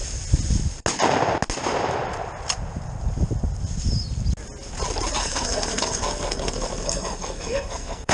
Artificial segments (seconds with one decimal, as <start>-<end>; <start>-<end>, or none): 5.2-8.1